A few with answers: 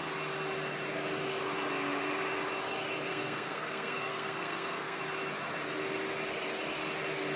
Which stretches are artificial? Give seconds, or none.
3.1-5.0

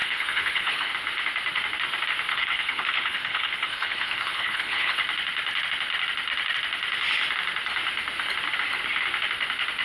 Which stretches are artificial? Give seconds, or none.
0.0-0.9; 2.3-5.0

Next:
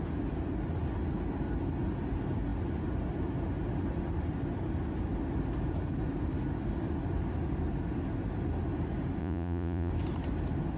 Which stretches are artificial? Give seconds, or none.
9.2-9.9